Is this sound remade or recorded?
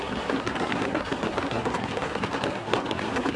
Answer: remade